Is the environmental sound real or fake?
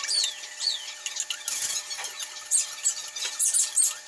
real